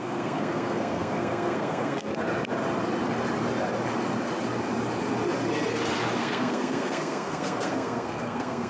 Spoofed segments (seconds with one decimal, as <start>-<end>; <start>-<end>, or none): 0.0-2.1; 6.2-8.7